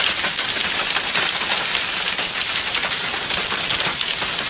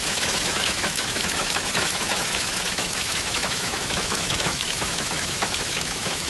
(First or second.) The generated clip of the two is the second